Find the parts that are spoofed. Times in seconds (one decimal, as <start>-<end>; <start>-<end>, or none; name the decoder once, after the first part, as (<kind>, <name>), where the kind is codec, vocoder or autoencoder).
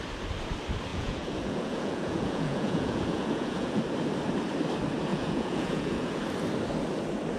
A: 0.9-3.8 (vocoder, Vocos); 5.1-6.2